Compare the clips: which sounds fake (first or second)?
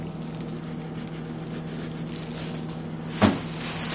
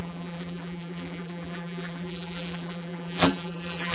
second